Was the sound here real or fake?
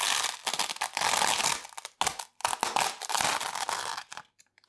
real